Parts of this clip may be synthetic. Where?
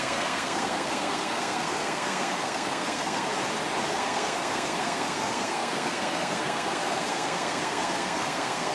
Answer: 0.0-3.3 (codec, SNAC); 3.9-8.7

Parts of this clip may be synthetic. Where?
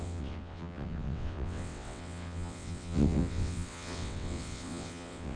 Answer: 0.0-5.4 (vocoder, WaveNeXt)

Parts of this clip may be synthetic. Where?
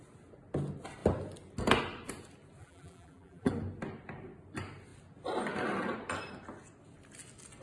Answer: 2.6-3.5 (vocoder, BigVGAN v2)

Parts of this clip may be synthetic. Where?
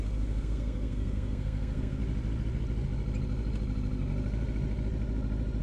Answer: 0.0-2.0 (codec, SNAC)